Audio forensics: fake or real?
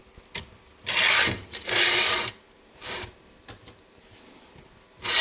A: real